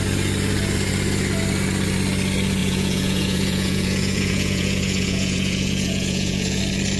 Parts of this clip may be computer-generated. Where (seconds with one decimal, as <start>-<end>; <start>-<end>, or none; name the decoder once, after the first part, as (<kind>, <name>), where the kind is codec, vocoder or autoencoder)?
2.6-6.6 (vocoder, Vocos)